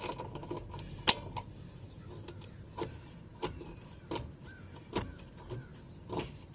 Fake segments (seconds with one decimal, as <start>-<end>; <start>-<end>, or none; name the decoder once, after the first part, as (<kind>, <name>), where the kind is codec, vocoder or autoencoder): none

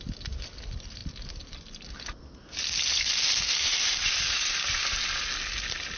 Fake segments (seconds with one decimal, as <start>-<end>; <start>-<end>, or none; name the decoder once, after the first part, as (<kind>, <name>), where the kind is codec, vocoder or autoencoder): none

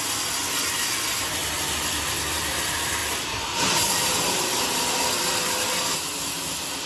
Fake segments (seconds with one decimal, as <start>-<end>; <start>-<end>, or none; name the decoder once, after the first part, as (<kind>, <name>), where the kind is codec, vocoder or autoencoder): none

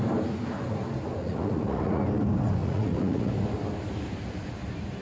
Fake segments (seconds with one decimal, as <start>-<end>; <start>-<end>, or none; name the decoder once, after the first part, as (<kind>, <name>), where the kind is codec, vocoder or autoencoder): 1.2-2.0 (vocoder, Vocos); 2.6-3.3

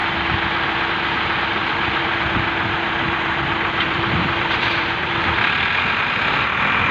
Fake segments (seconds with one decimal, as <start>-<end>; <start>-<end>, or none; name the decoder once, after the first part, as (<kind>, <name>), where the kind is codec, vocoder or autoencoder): 0.9-6.9 (vocoder, BigVGAN v2)

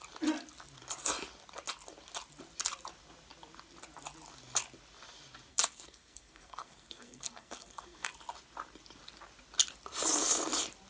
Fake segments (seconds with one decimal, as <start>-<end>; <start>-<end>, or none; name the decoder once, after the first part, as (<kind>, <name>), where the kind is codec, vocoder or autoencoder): 5.5-8.1 (codec, SNAC)